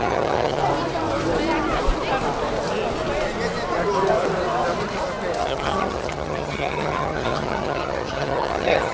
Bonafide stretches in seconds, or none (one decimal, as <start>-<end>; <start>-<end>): 0.6-5.4